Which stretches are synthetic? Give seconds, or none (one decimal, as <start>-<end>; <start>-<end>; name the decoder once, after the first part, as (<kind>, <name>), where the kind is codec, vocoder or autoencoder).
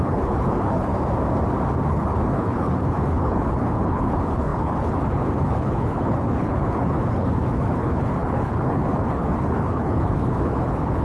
0.0-0.9 (codec, HILCodec); 1.9-11.0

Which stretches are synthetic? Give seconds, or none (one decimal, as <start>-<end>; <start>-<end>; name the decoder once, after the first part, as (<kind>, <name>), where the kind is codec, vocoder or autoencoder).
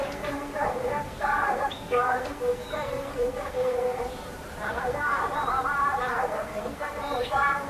0.0-4.0 (codec, SNAC); 4.7-5.2; 6.1-7.7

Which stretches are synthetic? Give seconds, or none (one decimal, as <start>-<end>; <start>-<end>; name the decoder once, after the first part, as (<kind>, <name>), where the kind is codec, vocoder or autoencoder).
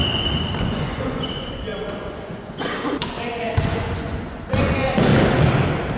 0.6-5.1 (vocoder, Vocos)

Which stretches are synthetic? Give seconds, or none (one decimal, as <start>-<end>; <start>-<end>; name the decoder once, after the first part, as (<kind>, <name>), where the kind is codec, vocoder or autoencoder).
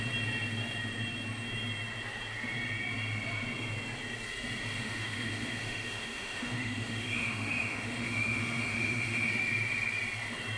4.8-9.3 (autoencoder, DAC-VAE)